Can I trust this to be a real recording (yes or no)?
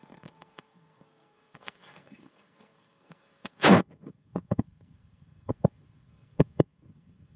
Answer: no